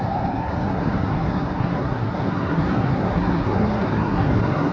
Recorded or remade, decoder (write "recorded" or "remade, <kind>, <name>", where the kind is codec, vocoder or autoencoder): remade, codec, SNAC